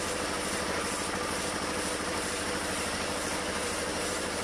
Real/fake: fake